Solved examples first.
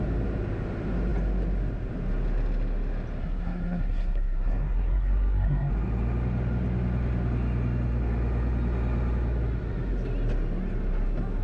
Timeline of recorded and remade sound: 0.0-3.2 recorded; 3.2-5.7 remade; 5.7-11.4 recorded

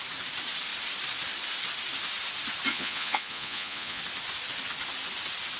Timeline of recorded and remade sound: 0.0-2.7 recorded; 2.7-4.0 remade; 4.0-5.6 recorded

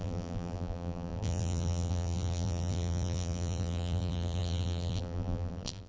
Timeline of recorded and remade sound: 0.0-5.9 remade